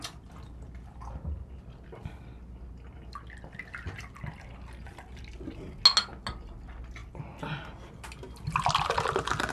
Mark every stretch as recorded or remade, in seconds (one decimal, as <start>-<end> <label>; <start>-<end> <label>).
0.0-9.5 recorded